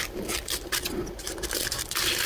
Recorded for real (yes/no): yes